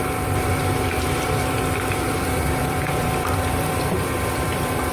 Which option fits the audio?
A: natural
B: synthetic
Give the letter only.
B